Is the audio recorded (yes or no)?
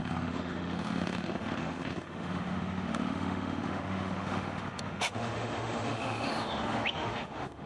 no